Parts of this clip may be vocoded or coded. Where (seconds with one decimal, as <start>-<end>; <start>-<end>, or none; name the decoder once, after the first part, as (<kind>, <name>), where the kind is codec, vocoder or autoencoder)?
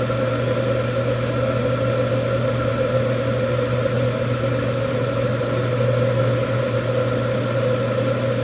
none